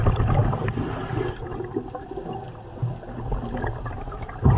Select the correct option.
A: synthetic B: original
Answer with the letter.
B